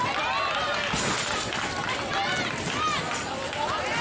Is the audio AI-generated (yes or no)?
no